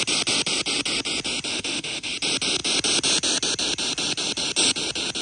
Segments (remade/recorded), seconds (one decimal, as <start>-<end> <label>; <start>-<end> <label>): 0.0-1.5 recorded; 1.5-2.1 remade; 2.1-5.2 recorded